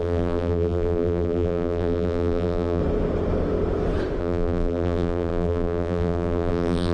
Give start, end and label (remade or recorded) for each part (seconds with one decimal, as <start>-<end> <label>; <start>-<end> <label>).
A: 0.0-2.8 remade; 2.8-4.2 recorded; 4.2-6.9 remade